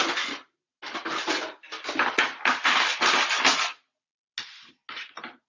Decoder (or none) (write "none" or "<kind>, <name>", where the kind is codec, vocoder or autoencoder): none